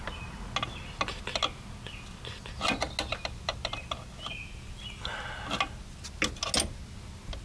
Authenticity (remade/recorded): recorded